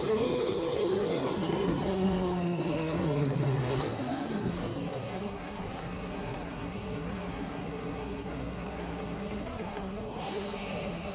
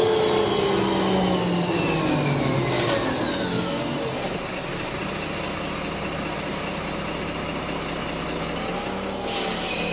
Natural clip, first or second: second